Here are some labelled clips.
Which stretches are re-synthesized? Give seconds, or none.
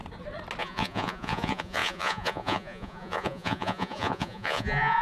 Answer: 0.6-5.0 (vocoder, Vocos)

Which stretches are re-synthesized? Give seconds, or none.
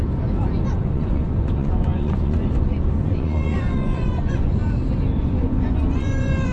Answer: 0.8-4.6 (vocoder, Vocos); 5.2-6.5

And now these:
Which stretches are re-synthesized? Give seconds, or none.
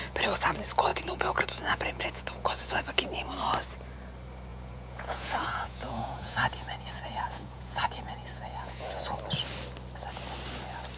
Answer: 0.9-2.8 (vocoder, Vocos); 4.5-9.0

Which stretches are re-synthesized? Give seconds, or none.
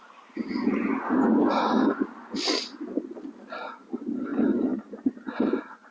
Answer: none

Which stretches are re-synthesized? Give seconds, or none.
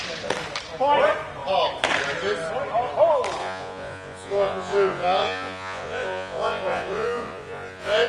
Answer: 3.4-8.1 (vocoder, Vocos)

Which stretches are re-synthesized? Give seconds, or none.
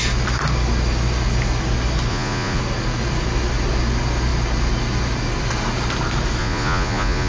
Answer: 2.1-2.6 (vocoder, Vocos); 6.4-7.3